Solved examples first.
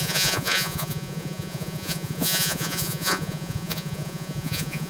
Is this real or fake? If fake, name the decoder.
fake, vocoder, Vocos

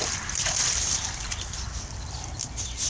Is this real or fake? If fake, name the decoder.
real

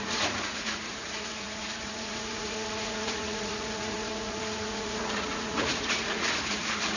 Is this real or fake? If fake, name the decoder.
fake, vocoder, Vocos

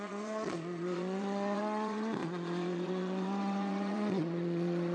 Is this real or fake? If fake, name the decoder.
fake, vocoder, Vocos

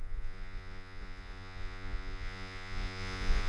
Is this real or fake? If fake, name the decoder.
fake, vocoder, Vocos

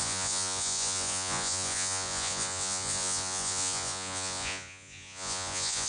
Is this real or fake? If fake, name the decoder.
fake, vocoder, Vocos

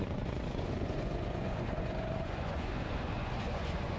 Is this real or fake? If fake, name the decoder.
fake, vocoder, Vocos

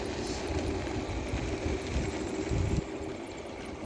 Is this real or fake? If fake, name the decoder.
real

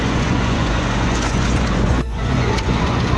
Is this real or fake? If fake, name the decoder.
fake, vocoder, Vocos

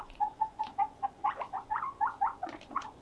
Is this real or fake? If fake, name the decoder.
fake, vocoder, Vocos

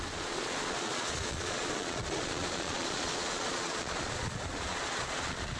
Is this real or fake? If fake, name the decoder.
fake, vocoder, Vocos